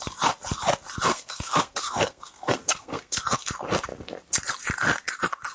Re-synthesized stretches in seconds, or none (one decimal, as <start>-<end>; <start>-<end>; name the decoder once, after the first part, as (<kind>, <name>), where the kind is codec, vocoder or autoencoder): 1.1-3.2 (codec, SNAC)